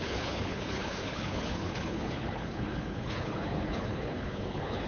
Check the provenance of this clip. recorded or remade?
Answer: remade